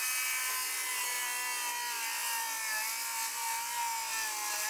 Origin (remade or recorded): recorded